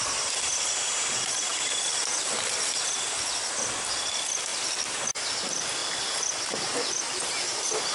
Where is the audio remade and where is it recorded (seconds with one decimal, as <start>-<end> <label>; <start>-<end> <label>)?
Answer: 0.0-5.8 recorded; 5.8-6.6 remade; 6.6-7.9 recorded